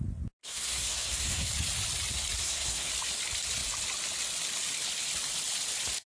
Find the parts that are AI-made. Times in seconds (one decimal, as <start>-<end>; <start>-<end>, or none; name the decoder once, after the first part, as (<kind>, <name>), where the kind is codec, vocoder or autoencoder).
0.4-1.5 (codec, SNAC); 2.4-2.9